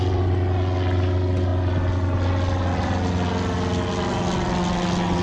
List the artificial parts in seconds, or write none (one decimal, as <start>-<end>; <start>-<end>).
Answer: none